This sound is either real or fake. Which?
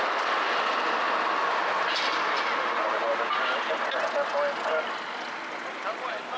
real